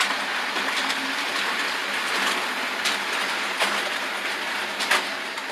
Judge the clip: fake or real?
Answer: real